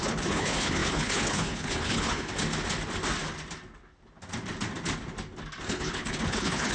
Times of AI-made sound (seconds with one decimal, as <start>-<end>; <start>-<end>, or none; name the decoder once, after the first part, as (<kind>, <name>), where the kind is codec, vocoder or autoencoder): 0.0-2.3 (codec, HILCodec); 5.6-6.7